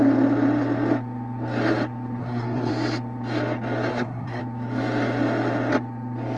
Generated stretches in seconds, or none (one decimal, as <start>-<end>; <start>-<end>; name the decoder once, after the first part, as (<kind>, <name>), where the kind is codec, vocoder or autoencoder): 2.2-2.7 (codec, SNAC); 3.9-4.4